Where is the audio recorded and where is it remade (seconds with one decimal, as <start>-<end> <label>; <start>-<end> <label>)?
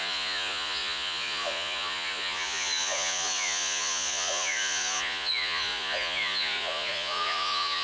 0.0-7.8 remade